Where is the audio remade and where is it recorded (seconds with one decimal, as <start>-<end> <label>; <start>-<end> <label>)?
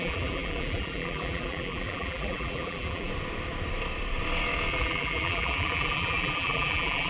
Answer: 0.0-3.1 remade; 3.1-4.7 recorded; 4.7-7.1 remade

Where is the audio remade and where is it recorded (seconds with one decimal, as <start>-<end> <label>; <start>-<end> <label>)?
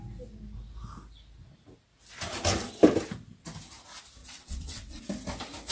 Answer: 0.0-4.2 recorded; 4.2-5.0 remade; 5.0-5.7 recorded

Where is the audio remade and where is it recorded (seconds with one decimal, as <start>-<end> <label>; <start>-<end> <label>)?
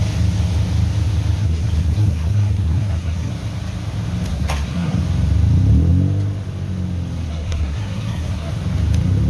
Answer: 0.0-1.4 recorded; 1.4-3.3 remade; 3.3-4.3 recorded; 4.3-5.0 remade; 5.0-7.3 recorded; 7.3-8.5 remade; 8.5-9.3 recorded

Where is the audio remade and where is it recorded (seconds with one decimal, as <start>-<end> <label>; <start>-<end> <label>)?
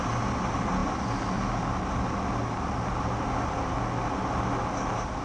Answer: 0.0-5.2 recorded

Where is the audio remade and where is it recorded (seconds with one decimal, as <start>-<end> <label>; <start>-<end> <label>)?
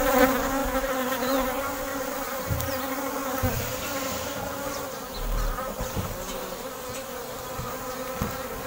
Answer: 0.0-3.2 recorded; 3.2-6.7 remade; 6.7-8.7 recorded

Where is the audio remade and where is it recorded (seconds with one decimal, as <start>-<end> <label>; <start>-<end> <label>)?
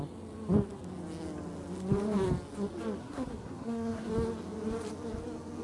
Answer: 0.0-3.0 recorded; 3.0-4.1 remade; 4.1-5.6 recorded